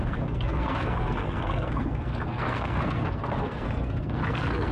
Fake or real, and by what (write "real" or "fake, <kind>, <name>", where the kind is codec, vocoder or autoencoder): fake, codec, SNAC